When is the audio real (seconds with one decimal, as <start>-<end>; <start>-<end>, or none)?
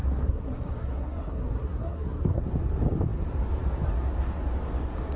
2.4-5.2